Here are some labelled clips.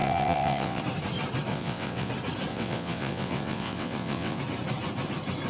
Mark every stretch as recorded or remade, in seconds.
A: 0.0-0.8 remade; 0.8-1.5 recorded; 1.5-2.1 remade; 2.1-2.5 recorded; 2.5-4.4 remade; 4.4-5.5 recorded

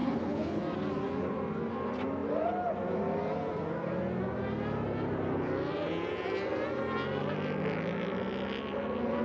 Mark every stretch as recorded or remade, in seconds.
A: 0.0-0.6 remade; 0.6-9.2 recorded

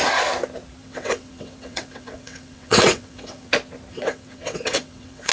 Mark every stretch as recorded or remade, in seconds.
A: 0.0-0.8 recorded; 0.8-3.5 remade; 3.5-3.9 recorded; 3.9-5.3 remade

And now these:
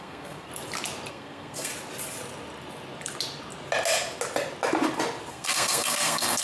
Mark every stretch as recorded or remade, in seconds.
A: 0.0-0.5 remade; 0.5-1.1 recorded; 1.1-1.7 remade; 1.7-5.3 recorded; 5.3-6.4 remade

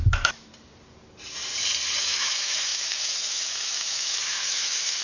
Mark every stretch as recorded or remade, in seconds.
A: 0.0-0.5 remade; 0.5-2.0 recorded; 2.0-5.0 remade

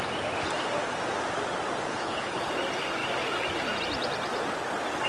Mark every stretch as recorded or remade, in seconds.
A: 0.0-1.9 recorded; 1.9-2.5 remade; 2.5-5.1 recorded

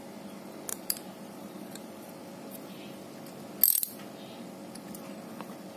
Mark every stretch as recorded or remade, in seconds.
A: 0.0-0.7 recorded; 0.7-2.1 remade; 2.1-5.8 recorded